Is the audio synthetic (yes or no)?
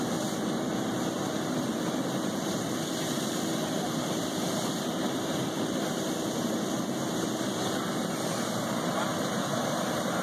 yes